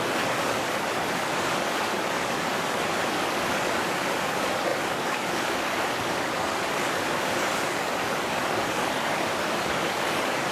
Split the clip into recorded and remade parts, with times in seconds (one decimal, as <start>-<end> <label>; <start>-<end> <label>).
0.0-10.5 remade